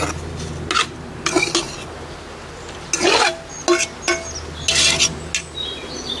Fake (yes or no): no